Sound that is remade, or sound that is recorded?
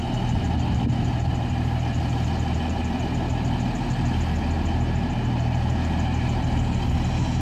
recorded